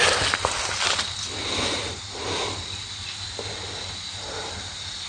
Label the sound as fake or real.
real